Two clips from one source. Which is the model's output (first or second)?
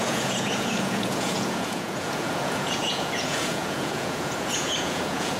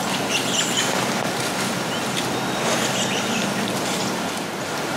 first